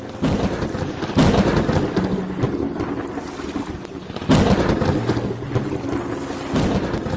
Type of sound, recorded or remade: recorded